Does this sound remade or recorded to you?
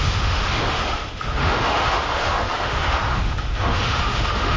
remade